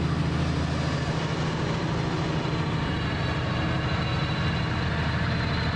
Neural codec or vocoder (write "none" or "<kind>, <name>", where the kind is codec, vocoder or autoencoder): none